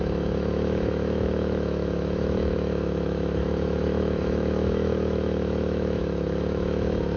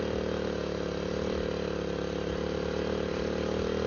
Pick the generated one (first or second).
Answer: first